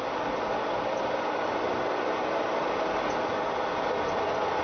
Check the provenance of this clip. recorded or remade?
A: recorded